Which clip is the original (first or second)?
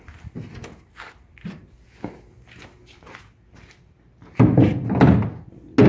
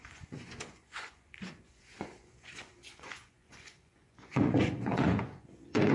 first